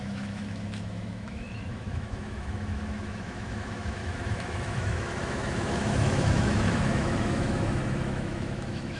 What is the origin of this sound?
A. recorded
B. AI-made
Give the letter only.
B